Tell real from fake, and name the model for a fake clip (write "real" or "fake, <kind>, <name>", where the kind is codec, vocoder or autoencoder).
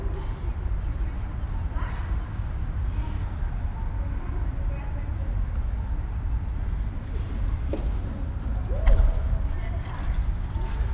real